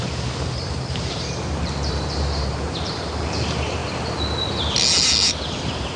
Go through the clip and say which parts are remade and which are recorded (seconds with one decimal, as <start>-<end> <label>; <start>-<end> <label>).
0.0-3.8 remade; 3.8-5.6 recorded; 5.6-6.0 remade